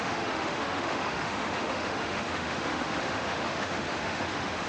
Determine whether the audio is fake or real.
fake